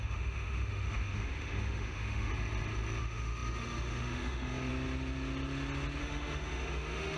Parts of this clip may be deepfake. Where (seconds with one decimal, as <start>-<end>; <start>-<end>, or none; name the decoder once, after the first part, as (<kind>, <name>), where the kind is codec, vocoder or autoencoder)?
0.0-2.3 (autoencoder, DAC-VAE); 3.0-4.7; 6.0-7.2